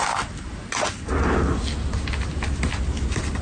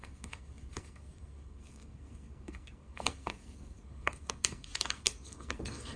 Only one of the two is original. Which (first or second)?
first